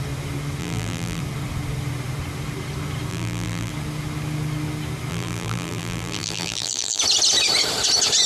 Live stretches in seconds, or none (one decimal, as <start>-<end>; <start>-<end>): 0.0-0.6; 1.2-3.1; 3.7-5.1; 7.0-8.3